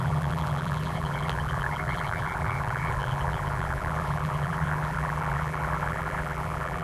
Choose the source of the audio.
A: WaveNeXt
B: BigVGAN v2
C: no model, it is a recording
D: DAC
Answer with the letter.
B